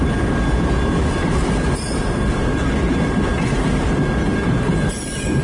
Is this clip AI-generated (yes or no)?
no